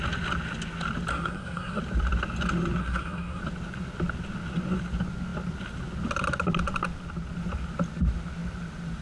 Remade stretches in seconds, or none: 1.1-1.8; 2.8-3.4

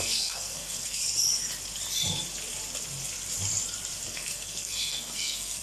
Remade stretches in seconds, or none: 0.0-1.0; 4.1-5.6

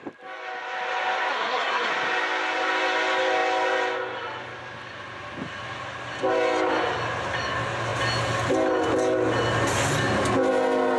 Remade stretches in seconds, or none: 1.3-1.9

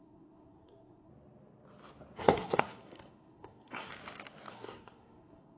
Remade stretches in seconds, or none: 0.0-1.1; 2.2-3.9; 4.5-5.6

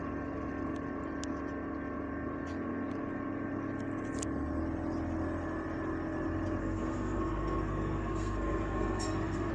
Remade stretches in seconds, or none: 6.6-9.5

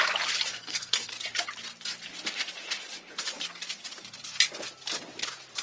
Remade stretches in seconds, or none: 0.5-1.1

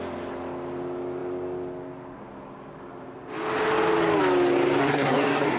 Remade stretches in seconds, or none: 4.8-5.6

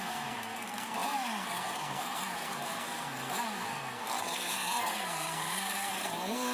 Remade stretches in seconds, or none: 0.0-6.5